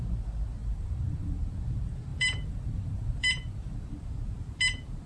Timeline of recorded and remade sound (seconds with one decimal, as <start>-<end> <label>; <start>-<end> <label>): 0.0-0.6 recorded; 0.6-1.4 remade; 1.4-2.1 recorded; 2.1-3.9 remade; 3.9-5.1 recorded